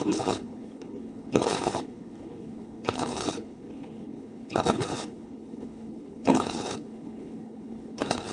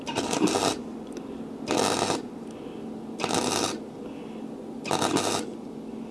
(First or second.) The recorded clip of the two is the second